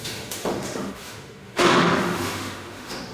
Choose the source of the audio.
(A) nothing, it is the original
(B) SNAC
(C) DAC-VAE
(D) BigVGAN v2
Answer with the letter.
C